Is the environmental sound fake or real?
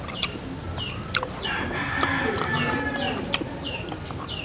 real